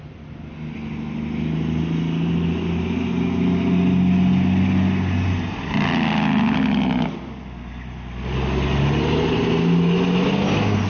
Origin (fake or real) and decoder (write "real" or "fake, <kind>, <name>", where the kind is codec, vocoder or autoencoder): real